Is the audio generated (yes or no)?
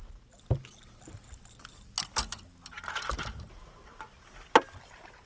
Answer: no